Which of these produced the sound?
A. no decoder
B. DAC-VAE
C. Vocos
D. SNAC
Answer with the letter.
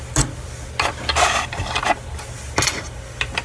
A